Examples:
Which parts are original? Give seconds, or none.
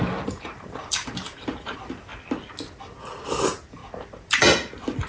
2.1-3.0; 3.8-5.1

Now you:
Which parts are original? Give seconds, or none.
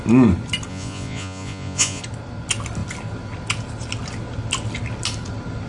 0.0-0.7; 2.0-5.7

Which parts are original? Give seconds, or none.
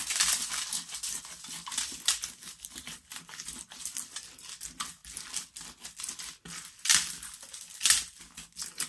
0.0-8.9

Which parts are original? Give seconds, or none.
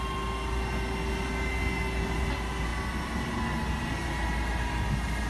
0.0-5.3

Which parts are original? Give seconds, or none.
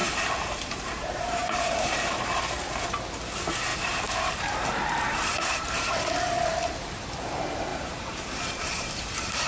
2.4-3.7; 5.9-7.7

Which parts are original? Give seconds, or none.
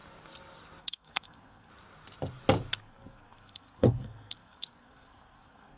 0.0-0.8; 1.7-2.8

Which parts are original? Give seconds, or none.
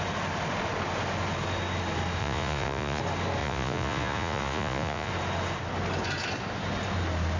0.0-2.2; 3.0-3.4; 5.1-7.4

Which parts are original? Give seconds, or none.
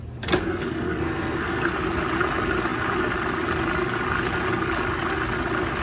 0.0-0.4; 1.7-5.8